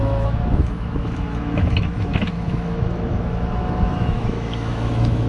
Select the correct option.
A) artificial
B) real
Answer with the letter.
A